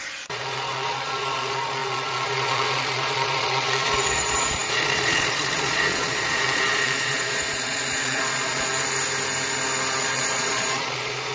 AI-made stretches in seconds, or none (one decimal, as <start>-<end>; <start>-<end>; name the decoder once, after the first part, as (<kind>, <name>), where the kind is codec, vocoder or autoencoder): 0.0-8.7 (vocoder, Vocos); 10.0-11.3